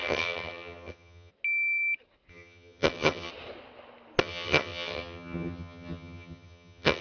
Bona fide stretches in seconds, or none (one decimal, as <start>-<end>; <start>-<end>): 1.3-2.3; 3.3-4.2